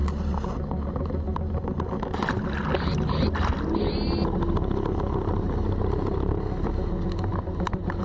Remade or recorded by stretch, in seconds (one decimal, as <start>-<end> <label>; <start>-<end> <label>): 0.0-5.3 recorded; 5.3-6.3 remade; 6.3-7.3 recorded; 7.3-8.0 remade